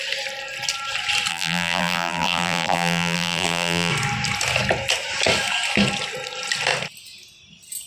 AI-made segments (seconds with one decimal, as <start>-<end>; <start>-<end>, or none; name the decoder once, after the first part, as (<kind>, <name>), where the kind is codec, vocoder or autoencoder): 1.3-3.9 (vocoder, BigVGAN v2)